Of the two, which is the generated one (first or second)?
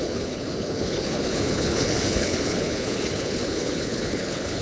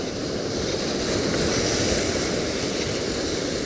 first